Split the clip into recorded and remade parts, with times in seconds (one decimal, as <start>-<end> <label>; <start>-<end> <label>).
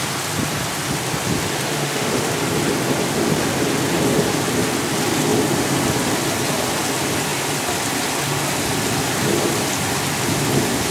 0.0-1.7 recorded; 1.7-2.3 remade; 2.3-10.9 recorded